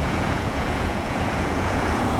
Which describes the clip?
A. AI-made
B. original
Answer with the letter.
A